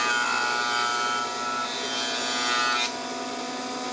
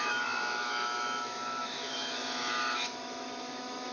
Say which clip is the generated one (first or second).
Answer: second